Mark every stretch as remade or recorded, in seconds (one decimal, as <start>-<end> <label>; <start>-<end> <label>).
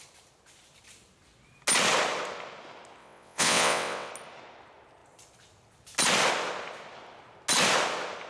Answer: 0.0-3.0 recorded; 3.0-4.1 remade; 4.1-8.3 recorded